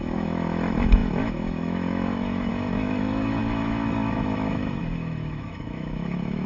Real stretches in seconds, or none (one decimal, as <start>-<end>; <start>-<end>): none